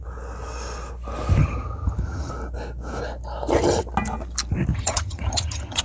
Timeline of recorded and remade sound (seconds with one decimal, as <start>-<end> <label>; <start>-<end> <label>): 0.0-1.4 recorded; 1.4-2.3 remade; 2.3-4.7 recorded; 4.7-5.8 remade